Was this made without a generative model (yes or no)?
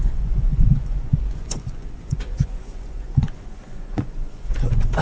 no